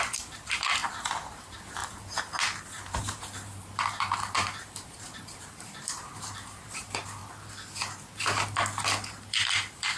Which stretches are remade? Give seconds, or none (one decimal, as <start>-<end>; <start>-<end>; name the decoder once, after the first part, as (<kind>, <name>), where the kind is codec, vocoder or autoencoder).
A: 0.0-1.8 (vocoder, BigVGAN v2); 2.6-7.2; 9.2-10.0

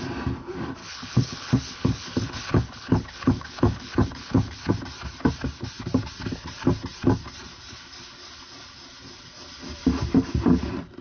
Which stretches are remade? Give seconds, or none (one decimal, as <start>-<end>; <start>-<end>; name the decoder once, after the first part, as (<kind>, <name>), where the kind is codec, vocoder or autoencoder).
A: 0.8-4.7 (codec, HILCodec)

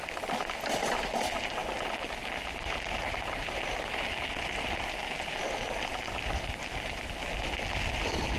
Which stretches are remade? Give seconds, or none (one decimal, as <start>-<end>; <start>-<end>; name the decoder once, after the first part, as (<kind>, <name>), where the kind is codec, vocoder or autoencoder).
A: none

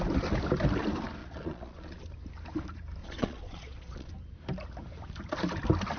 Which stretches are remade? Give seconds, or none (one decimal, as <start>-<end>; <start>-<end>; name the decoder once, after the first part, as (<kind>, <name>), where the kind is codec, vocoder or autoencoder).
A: 1.2-2.0 (vocoder, Vocos); 3.0-4.1

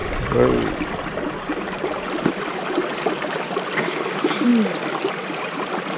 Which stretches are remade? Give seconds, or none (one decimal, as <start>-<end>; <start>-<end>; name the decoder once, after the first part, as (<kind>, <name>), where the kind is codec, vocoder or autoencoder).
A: none